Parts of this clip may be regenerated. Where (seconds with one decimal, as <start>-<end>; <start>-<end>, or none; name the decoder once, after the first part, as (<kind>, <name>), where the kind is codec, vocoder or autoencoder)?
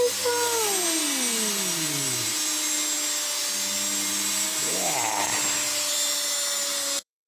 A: 6.7-7.3 (vocoder, BigVGAN v2)